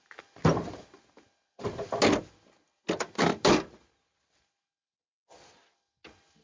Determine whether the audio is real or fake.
real